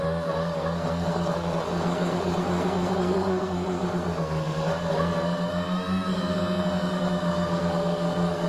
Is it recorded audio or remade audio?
remade